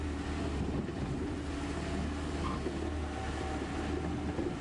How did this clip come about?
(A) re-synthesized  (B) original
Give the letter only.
B